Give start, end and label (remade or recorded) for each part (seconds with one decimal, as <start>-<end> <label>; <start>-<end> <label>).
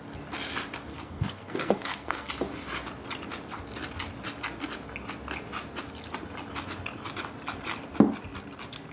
0.0-0.9 recorded; 0.9-2.3 remade; 2.3-8.9 recorded